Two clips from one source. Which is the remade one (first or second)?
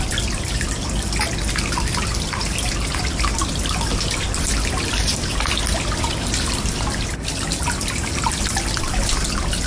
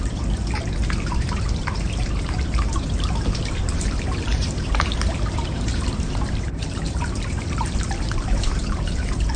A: second